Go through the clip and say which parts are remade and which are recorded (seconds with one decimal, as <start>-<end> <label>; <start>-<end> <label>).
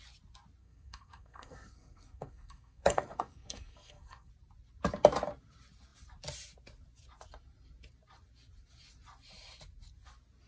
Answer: 0.0-0.6 recorded; 0.6-4.3 remade; 4.3-10.5 recorded